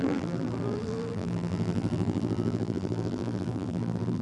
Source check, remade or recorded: remade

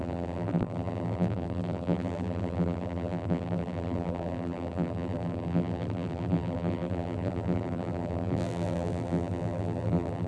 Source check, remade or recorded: remade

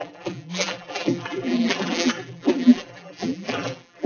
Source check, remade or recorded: remade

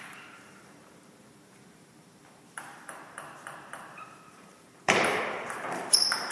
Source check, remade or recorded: remade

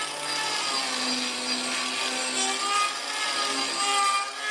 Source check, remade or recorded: recorded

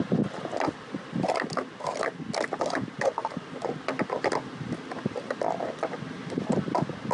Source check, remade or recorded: recorded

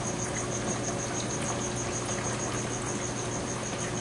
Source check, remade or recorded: recorded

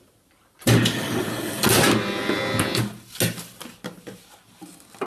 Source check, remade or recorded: recorded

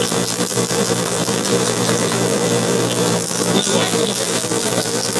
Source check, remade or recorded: remade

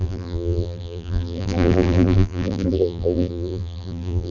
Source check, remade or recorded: remade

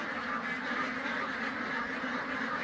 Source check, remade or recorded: recorded